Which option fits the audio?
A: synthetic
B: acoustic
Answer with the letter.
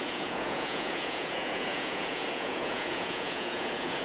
A